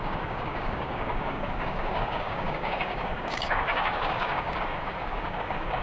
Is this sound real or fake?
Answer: fake